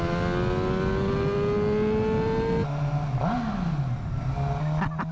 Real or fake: real